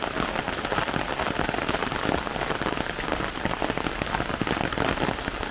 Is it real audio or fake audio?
real